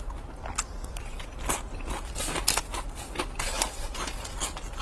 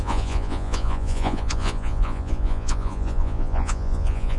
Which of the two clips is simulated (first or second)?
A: second